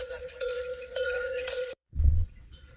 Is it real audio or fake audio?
fake